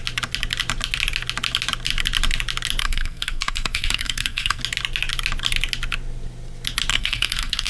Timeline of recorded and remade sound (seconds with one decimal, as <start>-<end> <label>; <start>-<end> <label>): 0.0-2.8 recorded; 2.8-4.6 remade; 4.6-6.9 recorded; 6.9-7.7 remade